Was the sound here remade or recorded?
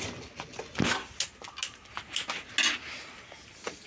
recorded